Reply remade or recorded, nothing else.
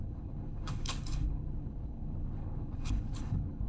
remade